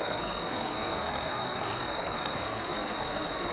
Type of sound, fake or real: fake